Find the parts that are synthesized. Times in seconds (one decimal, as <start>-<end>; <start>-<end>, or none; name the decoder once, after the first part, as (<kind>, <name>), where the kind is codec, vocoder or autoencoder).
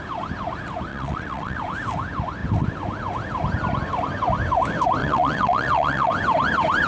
0.9-1.6 (vocoder, WaveNeXt); 5.0-6.1